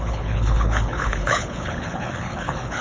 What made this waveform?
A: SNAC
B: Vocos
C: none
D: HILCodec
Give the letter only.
D